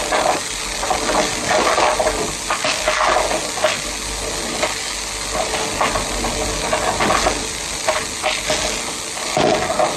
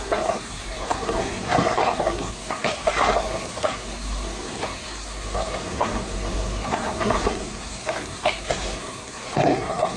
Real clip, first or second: first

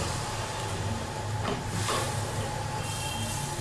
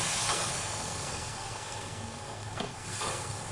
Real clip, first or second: first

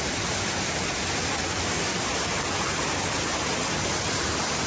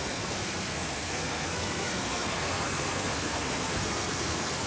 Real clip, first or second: first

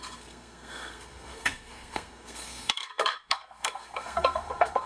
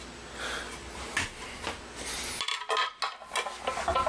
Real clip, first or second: second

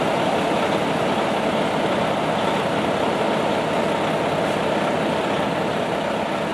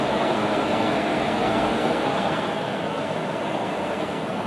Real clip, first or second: first